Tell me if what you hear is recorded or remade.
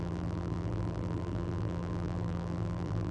remade